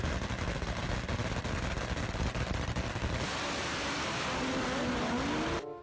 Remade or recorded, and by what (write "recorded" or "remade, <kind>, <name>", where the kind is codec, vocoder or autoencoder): recorded